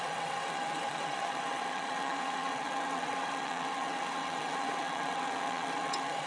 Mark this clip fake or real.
fake